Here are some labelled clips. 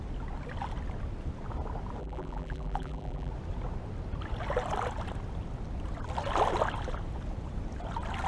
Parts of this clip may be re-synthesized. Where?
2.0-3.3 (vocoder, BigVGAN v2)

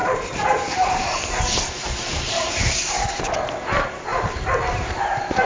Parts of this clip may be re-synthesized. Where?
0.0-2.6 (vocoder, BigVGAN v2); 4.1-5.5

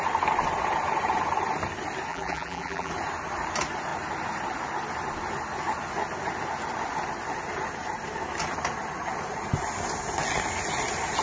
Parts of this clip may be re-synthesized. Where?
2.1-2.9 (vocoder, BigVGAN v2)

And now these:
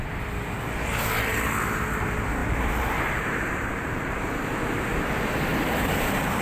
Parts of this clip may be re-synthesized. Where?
1.3-2.0 (vocoder, BigVGAN v2); 2.4-4.1; 5.5-6.4

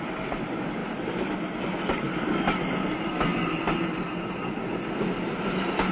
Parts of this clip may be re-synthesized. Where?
0.8-1.6 (vocoder, BigVGAN v2)